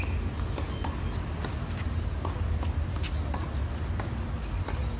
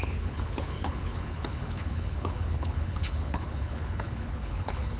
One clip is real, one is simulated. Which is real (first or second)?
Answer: first